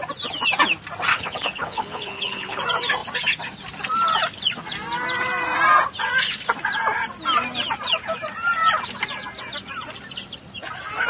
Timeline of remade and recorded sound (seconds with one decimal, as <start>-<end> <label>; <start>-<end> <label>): 0.0-1.1 recorded; 1.1-2.6 remade; 2.6-11.1 recorded